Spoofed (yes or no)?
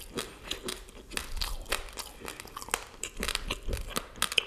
no